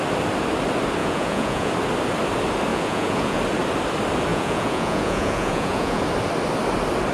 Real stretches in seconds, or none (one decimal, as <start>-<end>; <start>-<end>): 0.0-1.0; 1.7-2.7; 3.4-4.3; 6.0-7.1